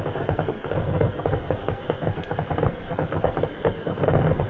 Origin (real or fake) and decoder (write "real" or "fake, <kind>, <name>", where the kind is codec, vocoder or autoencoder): fake, codec, SNAC